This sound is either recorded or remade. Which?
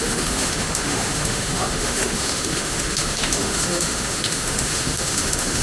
remade